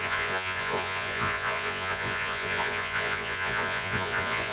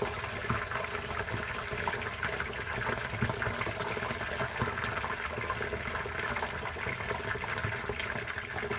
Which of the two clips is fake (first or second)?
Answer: first